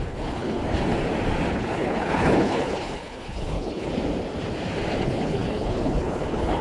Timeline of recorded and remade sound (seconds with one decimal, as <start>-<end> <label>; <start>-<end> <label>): 0.0-0.6 remade; 0.6-1.5 recorded; 1.5-3.9 remade; 3.9-5.0 recorded; 5.0-6.6 remade